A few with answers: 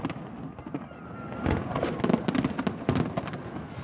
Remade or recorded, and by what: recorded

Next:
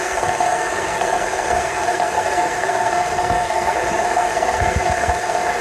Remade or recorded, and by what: remade, codec, SNAC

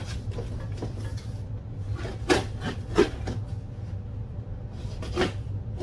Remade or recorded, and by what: recorded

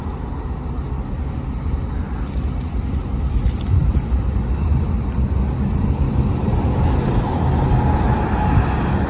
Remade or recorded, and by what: recorded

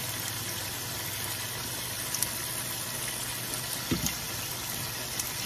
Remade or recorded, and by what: recorded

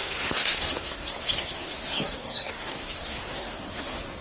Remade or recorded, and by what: remade, codec, SNAC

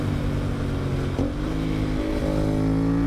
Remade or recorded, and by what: recorded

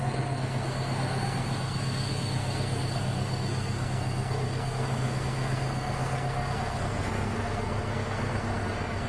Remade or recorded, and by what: remade, codec, SNAC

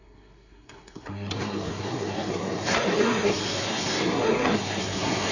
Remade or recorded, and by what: remade, codec, SNAC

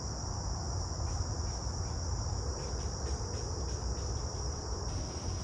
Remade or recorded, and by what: recorded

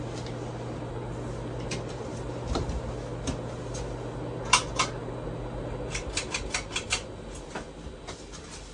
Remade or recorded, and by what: recorded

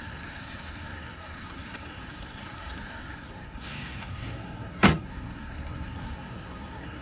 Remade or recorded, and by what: remade, codec, SNAC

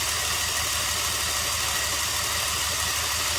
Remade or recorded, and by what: recorded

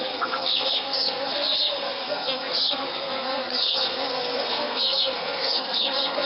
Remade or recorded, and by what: remade, codec, SNAC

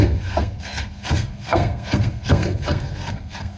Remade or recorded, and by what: remade, codec, SNAC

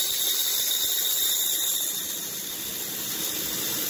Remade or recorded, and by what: recorded